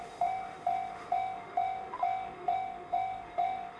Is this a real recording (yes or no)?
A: no